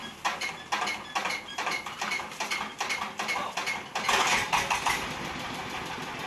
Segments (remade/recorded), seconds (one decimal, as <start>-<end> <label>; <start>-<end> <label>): 0.0-6.3 recorded

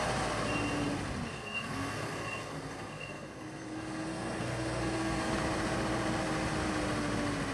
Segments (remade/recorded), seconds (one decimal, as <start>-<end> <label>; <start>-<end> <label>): 0.0-1.3 recorded; 1.3-5.3 remade; 5.3-7.5 recorded

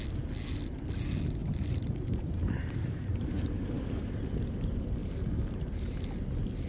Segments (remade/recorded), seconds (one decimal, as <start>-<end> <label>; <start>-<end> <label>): 0.0-1.4 recorded; 1.4-4.3 remade; 4.3-5.0 recorded; 5.0-6.0 remade; 6.0-6.7 recorded

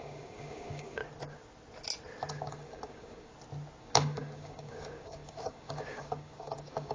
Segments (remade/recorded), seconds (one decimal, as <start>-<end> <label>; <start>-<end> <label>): 0.0-1.0 remade; 1.0-2.3 recorded; 2.3-3.3 remade; 3.3-3.8 recorded; 3.8-6.9 remade